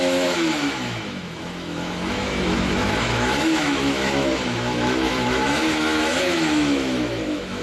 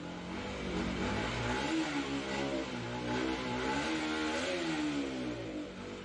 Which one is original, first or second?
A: second